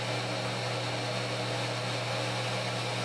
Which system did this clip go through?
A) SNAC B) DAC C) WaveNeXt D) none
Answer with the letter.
D